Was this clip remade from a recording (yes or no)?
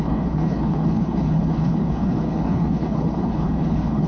yes